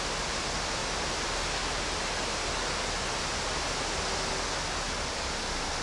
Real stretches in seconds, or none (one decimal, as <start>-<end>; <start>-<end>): 0.0-5.8